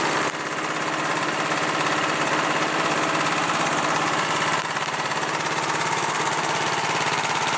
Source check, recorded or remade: remade